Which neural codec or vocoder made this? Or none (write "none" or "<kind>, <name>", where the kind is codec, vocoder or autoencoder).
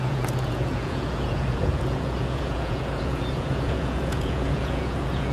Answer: vocoder, Vocos